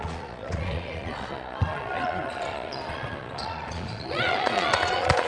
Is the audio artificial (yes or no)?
yes